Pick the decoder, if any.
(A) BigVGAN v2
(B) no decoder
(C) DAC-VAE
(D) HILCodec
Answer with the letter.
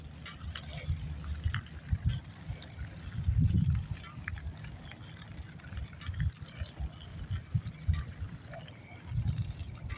B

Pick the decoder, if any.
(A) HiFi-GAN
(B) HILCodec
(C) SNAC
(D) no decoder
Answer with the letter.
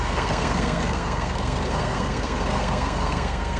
C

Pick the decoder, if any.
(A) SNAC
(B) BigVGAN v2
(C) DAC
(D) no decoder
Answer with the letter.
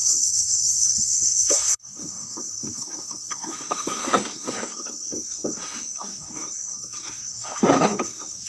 A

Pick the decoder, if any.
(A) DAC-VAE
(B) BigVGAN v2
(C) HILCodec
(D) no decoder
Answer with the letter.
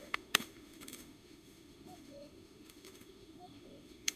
A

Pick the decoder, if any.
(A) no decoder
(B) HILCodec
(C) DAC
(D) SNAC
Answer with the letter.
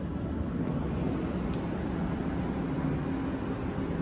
A